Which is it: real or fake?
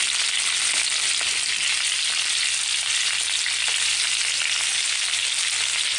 real